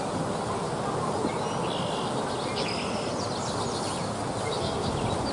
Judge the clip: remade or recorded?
recorded